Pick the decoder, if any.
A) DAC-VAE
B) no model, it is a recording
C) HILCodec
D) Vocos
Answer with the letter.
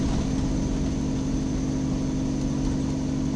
B